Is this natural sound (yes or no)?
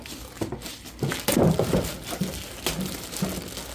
yes